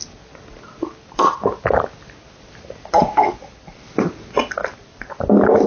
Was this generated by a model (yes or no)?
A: no